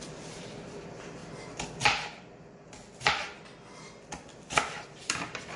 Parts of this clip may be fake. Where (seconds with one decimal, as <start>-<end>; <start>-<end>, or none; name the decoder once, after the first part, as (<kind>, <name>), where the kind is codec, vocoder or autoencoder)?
0.0-1.2 (vocoder, BigVGAN v2); 4.5-5.6